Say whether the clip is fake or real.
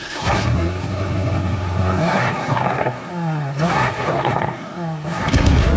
fake